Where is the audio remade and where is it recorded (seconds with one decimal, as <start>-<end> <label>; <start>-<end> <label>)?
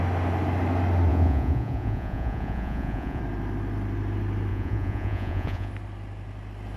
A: 0.0-1.1 recorded; 1.1-3.2 remade; 3.2-4.5 recorded; 4.5-5.7 remade; 5.7-6.8 recorded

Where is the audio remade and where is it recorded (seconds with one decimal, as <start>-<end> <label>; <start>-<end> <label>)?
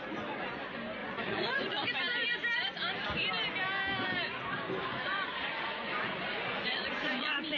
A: 0.0-1.0 recorded; 1.0-2.0 remade; 2.0-5.1 recorded; 5.1-7.6 remade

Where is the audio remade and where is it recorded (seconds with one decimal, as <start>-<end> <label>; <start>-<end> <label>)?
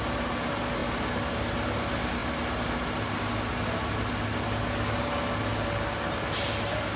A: 0.0-7.0 recorded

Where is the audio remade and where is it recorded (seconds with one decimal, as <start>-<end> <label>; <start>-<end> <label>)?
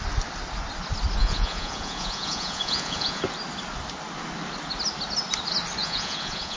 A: 0.0-1.2 recorded; 1.2-3.2 remade; 3.2-5.8 recorded; 5.8-6.6 remade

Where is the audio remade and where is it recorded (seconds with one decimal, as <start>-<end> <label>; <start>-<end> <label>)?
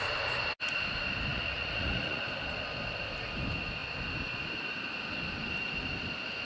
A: 0.0-1.3 recorded; 1.3-2.2 remade; 2.2-6.4 recorded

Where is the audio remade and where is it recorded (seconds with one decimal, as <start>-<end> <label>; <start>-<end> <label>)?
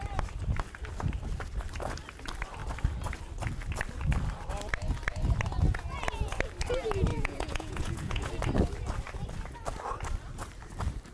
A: 0.0-7.1 recorded; 7.1-8.3 remade; 8.3-11.1 recorded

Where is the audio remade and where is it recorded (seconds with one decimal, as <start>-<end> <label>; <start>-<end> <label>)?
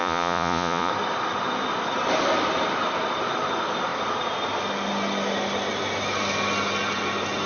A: 0.0-0.9 remade; 0.9-7.5 recorded